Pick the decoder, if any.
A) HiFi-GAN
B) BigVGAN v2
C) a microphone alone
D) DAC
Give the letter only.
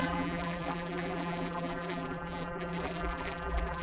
B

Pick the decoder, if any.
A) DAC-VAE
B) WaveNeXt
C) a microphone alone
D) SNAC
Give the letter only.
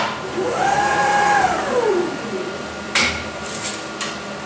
C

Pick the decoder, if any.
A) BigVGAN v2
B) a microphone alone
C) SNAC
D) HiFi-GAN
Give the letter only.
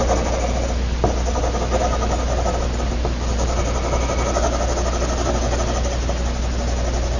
B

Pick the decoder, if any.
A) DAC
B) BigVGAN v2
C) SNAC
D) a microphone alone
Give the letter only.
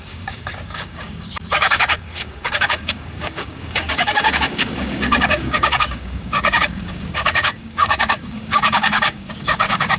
A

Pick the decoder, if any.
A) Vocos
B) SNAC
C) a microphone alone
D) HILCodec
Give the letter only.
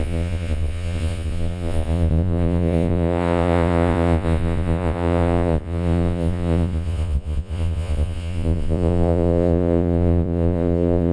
A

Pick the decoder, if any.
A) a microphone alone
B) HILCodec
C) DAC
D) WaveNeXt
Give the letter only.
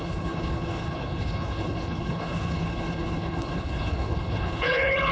B